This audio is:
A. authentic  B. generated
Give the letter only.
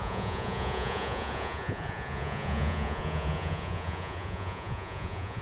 B